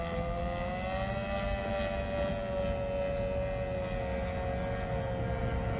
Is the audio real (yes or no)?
yes